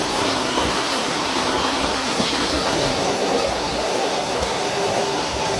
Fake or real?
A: fake